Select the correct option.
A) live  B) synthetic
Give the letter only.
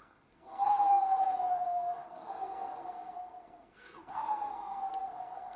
B